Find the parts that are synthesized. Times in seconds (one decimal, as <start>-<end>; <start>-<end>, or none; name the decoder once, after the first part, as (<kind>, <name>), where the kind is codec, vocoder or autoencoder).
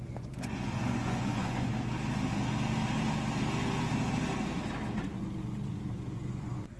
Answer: 0.0-1.7 (vocoder, Vocos); 5.7-6.8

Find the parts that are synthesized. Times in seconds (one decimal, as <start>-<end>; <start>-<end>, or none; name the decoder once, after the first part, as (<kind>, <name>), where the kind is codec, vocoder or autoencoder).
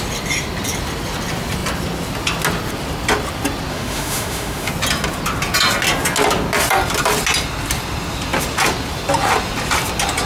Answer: 3.7-4.7 (autoencoder, DAC-VAE)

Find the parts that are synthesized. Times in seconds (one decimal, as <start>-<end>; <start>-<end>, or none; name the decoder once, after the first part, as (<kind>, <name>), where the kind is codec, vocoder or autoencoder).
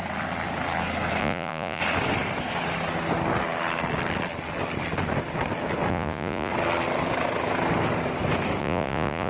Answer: 1.2-1.8 (vocoder, Vocos); 5.9-6.5; 8.6-9.3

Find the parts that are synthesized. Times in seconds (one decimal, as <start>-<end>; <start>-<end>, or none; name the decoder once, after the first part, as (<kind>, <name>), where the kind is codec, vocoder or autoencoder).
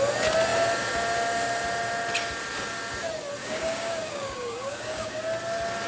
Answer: 3.4-5.2 (codec, DAC)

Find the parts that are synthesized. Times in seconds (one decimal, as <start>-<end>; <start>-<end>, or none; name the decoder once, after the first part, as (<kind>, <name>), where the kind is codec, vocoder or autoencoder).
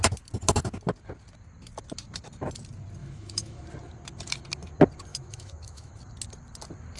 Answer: 3.0-3.6 (autoencoder, DAC-VAE); 5.1-6.0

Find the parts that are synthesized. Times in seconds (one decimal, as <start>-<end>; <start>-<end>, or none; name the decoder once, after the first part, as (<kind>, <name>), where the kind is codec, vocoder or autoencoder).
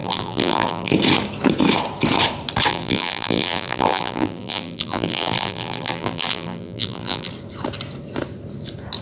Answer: 0.0-0.9 (vocoder, BigVGAN v2); 2.7-7.3